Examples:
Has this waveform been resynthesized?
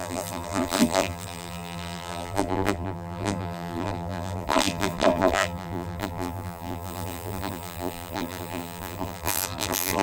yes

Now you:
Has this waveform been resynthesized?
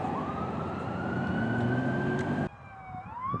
no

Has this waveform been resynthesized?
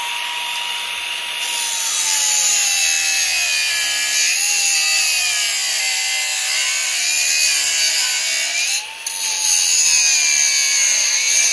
no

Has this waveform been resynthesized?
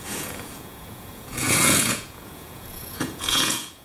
yes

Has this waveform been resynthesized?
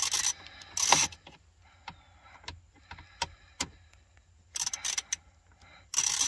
no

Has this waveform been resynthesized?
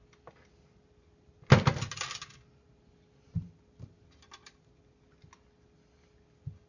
no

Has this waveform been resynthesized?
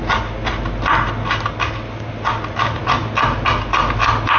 no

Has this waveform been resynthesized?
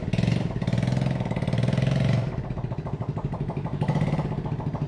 no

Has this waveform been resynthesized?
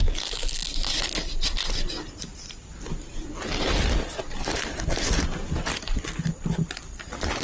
no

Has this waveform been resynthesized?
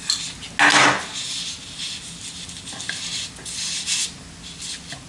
no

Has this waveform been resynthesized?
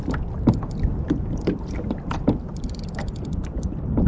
no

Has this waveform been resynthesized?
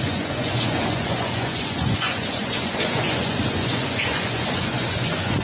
yes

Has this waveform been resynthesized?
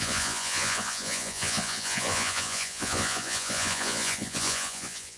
yes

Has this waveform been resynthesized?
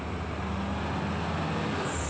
no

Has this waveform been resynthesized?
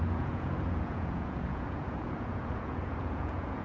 yes